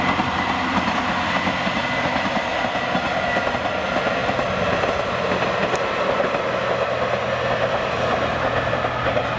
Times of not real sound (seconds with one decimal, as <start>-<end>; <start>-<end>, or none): none